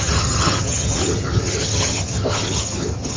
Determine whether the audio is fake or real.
fake